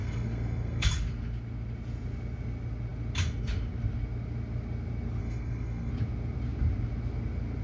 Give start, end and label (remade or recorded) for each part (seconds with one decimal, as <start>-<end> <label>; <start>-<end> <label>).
0.0-0.9 remade; 0.9-5.2 recorded; 5.2-5.9 remade; 5.9-7.6 recorded

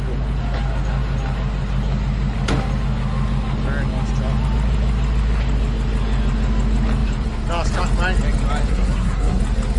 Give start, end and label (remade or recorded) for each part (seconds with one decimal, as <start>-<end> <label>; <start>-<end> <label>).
0.0-8.7 recorded; 8.7-9.4 remade; 9.4-9.8 recorded

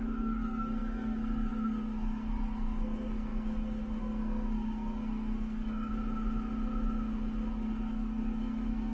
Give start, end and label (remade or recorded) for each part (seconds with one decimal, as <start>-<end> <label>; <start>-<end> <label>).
0.0-5.9 remade; 5.9-7.5 recorded; 7.5-8.9 remade

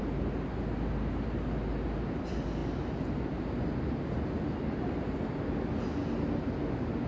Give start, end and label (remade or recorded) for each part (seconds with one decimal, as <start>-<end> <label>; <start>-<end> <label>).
0.0-7.1 recorded

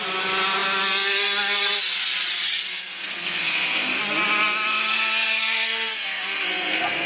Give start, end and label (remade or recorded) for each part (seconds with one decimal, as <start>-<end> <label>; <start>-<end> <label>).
0.0-2.7 recorded; 2.7-4.0 remade; 4.0-4.7 recorded; 4.7-7.1 remade

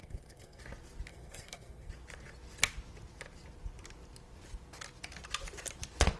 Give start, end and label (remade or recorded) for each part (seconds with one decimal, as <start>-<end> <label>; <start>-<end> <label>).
0.0-0.6 remade; 0.6-1.1 recorded; 1.1-1.9 remade; 1.9-6.2 recorded

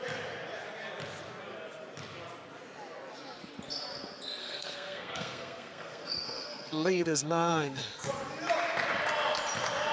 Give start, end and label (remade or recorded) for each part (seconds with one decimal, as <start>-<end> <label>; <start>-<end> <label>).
0.0-4.4 recorded; 4.4-8.1 remade; 8.1-9.9 recorded